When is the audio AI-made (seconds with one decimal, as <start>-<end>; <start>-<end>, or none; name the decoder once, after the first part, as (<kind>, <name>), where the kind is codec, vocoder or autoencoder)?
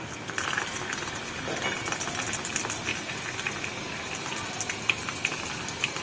none